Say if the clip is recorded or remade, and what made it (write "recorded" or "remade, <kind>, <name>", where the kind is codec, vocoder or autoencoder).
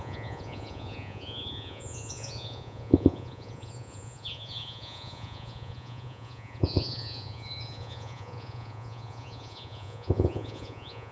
remade, vocoder, Vocos